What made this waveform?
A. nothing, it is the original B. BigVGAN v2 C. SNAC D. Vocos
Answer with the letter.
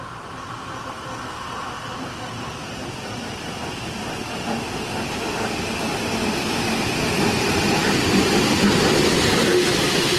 B